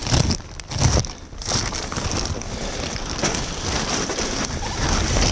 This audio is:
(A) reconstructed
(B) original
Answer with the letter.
B